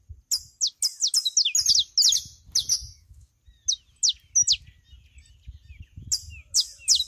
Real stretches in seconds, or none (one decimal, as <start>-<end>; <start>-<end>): 0.0-2.7; 3.3-7.1